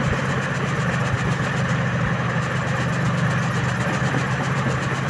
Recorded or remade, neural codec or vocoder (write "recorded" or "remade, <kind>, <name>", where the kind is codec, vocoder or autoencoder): recorded